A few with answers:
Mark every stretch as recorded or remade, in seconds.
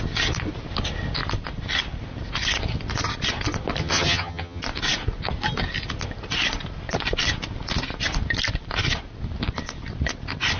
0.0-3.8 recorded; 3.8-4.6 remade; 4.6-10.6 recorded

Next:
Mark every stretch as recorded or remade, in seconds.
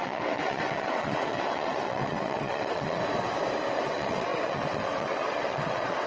0.0-3.0 remade; 3.0-3.7 recorded; 3.7-6.1 remade